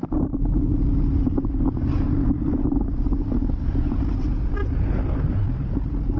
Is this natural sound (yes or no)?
yes